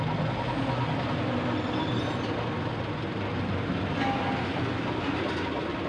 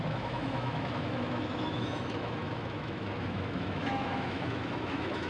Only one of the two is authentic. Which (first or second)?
first